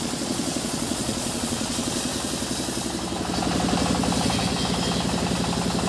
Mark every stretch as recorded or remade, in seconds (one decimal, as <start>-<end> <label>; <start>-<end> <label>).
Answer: 0.0-2.1 remade; 2.1-5.9 recorded